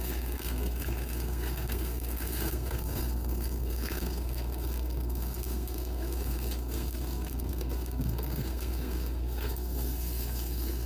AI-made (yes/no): yes